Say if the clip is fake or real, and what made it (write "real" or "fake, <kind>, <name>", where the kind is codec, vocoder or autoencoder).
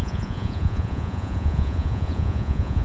fake, vocoder, Vocos